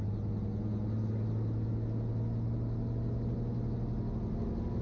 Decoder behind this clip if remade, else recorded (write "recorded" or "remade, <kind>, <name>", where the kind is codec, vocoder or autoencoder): recorded